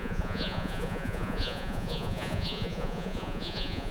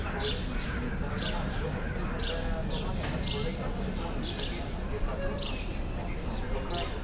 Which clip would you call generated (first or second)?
first